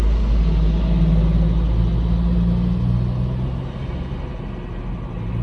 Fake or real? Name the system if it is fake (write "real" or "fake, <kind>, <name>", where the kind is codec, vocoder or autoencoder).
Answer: real